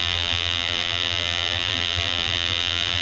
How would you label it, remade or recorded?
remade